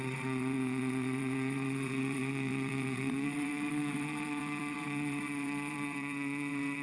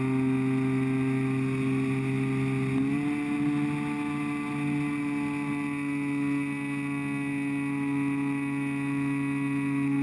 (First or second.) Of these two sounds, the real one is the second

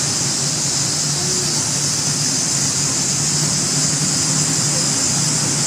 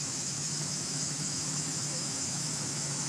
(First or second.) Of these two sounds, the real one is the first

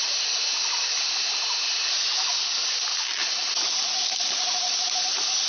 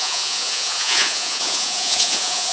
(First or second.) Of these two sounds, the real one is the first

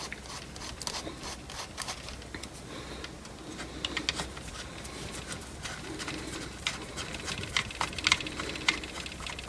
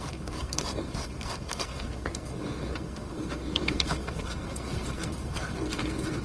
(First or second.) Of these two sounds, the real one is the first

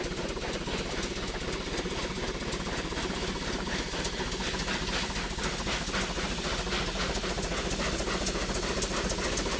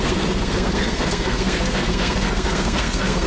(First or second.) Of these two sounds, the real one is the first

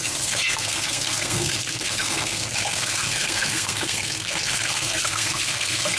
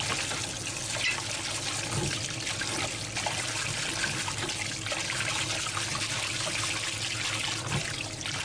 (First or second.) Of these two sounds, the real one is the second